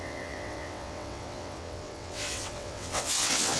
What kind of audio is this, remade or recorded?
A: remade